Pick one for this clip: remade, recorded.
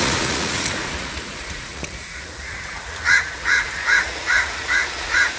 remade